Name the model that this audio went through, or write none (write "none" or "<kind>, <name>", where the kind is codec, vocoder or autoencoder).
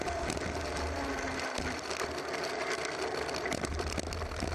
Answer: none